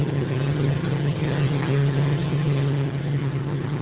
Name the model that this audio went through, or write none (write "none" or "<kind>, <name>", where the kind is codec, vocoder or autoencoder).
vocoder, HiFi-GAN